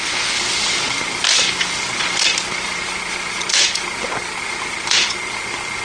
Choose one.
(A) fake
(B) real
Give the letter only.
B